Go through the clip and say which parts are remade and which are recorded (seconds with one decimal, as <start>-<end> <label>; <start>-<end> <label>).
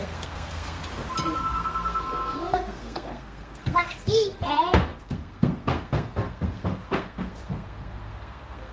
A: 0.0-0.8 remade; 0.8-1.4 recorded; 1.4-8.7 remade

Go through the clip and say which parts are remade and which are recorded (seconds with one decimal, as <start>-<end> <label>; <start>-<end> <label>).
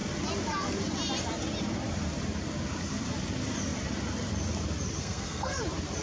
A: 0.0-5.0 recorded; 5.0-5.6 remade; 5.6-6.0 recorded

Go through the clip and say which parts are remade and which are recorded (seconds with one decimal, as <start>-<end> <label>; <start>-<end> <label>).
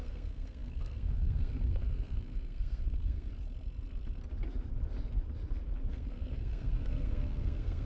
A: 0.0-3.3 remade; 3.3-5.9 recorded; 5.9-7.8 remade